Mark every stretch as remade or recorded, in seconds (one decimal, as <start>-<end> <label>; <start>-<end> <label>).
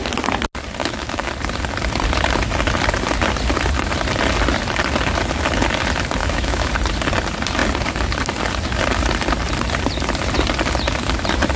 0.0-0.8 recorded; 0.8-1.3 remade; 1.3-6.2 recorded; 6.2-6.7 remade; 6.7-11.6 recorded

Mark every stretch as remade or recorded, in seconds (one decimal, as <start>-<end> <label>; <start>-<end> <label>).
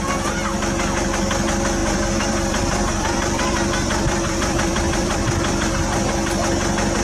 0.0-1.8 recorded; 1.8-5.7 remade; 5.7-7.0 recorded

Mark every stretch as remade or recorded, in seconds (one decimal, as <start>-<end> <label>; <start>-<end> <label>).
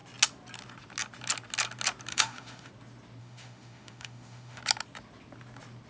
0.0-2.1 recorded; 2.1-2.7 remade; 2.7-3.2 recorded; 3.2-4.6 remade; 4.6-5.9 recorded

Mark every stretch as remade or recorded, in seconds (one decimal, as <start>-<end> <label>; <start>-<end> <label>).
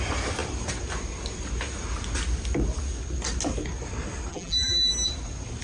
0.0-4.3 recorded; 4.3-4.9 remade; 4.9-5.6 recorded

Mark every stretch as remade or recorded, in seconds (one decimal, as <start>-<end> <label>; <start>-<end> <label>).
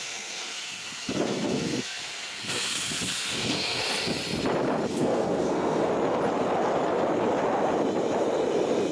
0.0-3.8 remade; 3.8-4.9 recorded; 4.9-5.9 remade; 5.9-8.9 recorded